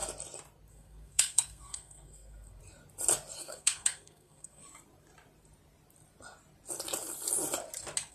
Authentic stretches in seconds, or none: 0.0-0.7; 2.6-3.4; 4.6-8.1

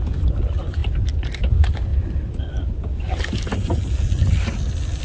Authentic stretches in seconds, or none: 0.0-5.0

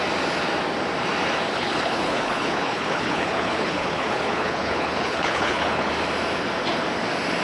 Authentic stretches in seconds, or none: 0.0-1.5; 5.9-7.4

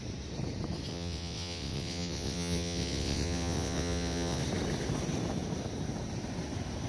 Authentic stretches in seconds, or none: 0.0-0.9; 4.4-6.9

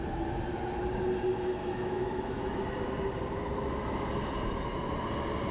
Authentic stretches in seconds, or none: 0.0-1.6; 2.6-5.5

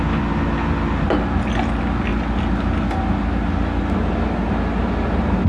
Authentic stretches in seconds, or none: 0.0-5.5

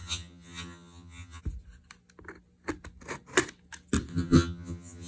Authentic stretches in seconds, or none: 1.4-4.1

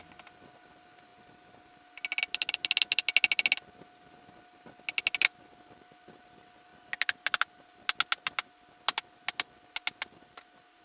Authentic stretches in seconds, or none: 0.0-10.8